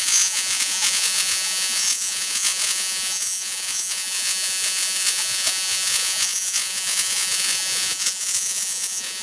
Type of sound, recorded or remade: remade